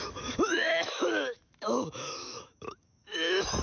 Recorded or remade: remade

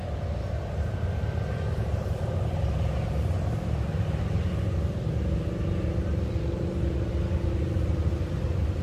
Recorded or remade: recorded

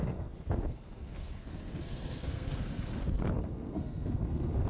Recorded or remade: remade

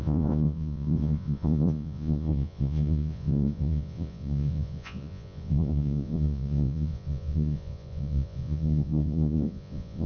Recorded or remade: remade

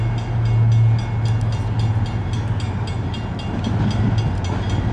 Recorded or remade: recorded